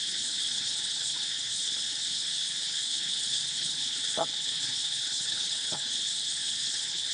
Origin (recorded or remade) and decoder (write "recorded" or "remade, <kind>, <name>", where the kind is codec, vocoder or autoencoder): remade, codec, HILCodec